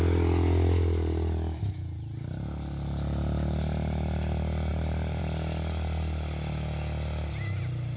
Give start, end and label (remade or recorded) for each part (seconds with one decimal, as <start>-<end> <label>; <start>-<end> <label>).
0.0-4.7 recorded; 4.7-5.2 remade; 5.2-8.0 recorded